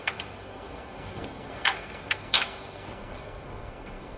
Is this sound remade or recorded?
remade